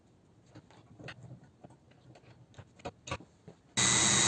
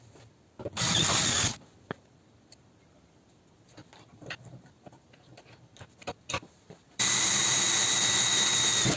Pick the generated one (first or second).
second